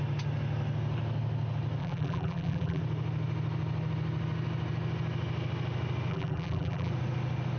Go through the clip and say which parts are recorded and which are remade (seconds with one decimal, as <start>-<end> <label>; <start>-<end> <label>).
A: 0.0-1.8 recorded; 1.8-2.8 remade; 2.8-6.1 recorded; 6.1-6.9 remade; 6.9-7.6 recorded